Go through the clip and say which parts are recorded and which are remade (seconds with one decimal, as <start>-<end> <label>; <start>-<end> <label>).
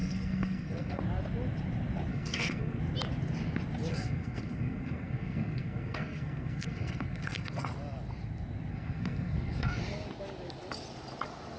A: 0.0-1.0 remade; 1.0-2.1 recorded; 2.1-2.8 remade; 2.8-3.9 recorded; 3.9-7.7 remade; 7.7-8.7 recorded; 8.7-9.8 remade; 9.8-11.6 recorded